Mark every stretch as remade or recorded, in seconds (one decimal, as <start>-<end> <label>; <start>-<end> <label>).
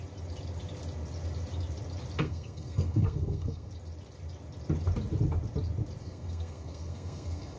0.0-2.2 recorded; 2.2-3.7 remade; 3.7-6.0 recorded; 6.0-7.6 remade